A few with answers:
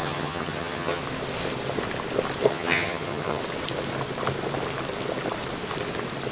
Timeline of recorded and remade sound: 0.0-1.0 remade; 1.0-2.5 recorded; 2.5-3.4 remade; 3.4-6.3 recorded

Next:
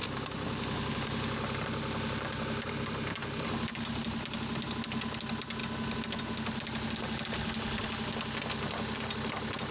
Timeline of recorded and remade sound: 0.0-9.7 recorded

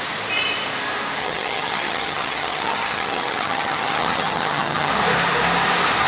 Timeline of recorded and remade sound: 0.0-1.2 recorded; 1.2-4.9 remade; 4.9-6.1 recorded

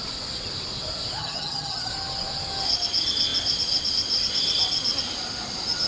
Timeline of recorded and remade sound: 0.0-1.2 recorded; 1.2-1.9 remade; 1.9-5.9 recorded

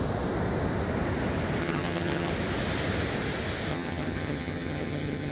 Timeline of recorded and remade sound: 0.0-1.6 recorded; 1.6-2.3 remade; 2.3-3.7 recorded; 3.7-5.3 remade

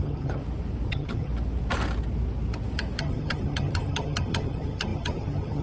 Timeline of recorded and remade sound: 0.0-0.4 remade; 0.4-0.9 recorded; 0.9-1.3 remade; 1.3-3.0 recorded; 3.0-5.6 remade